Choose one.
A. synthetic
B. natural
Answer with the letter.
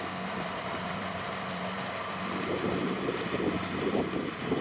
A